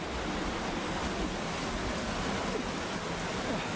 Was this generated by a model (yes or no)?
no